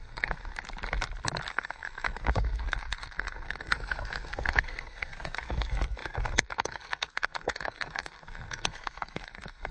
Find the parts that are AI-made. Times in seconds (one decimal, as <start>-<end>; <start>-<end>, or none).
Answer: 0.0-0.5; 1.5-9.7